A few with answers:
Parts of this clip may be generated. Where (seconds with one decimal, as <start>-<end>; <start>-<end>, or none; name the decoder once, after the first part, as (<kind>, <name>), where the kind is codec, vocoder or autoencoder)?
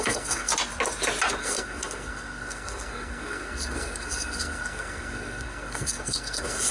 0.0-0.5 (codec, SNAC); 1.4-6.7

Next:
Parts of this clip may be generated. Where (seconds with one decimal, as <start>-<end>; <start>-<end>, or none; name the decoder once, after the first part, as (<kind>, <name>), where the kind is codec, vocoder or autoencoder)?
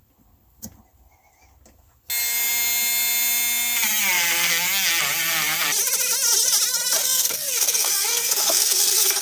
7.0-9.2 (codec, SNAC)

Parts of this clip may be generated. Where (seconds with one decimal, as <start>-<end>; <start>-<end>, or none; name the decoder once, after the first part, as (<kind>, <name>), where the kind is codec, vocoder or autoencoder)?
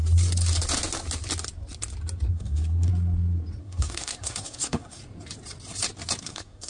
2.3-2.9 (codec, SNAC); 3.6-5.0; 6.2-6.7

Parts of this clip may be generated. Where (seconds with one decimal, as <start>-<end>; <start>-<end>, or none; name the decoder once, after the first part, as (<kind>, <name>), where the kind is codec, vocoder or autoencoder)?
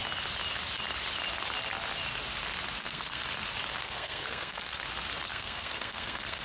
2.8-3.2 (codec, SNAC); 3.8-4.7; 5.3-6.4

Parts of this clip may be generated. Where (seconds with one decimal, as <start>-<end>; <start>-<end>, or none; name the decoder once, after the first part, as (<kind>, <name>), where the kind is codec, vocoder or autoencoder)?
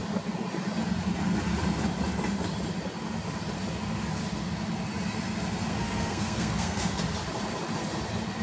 5.7-7.0 (codec, SNAC)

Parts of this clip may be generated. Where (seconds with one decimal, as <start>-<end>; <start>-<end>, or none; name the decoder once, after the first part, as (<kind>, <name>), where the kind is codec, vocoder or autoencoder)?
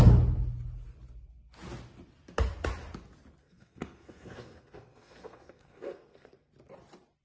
3.4-6.5 (codec, SNAC)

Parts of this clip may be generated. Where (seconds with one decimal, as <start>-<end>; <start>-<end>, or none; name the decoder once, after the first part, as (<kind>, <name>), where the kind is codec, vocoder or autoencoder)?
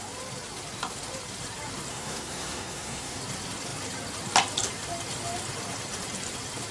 1.9-3.2 (codec, SNAC)